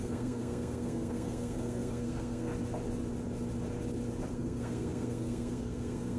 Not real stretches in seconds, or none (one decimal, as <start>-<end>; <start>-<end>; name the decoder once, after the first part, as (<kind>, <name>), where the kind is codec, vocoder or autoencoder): 0.0-2.5 (codec, SNAC); 4.3-6.2